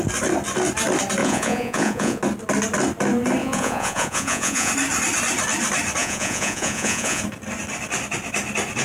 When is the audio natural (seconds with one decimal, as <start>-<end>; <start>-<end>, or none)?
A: 0.0-1.2; 2.2-3.4; 4.7-6.0; 7.2-8.8